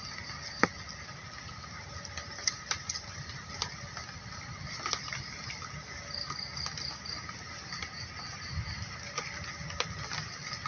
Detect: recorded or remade recorded